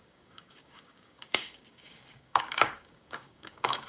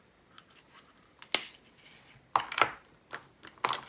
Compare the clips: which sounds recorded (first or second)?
second